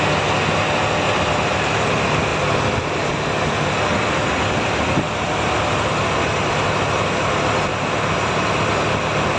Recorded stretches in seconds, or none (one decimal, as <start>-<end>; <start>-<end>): 0.0-9.4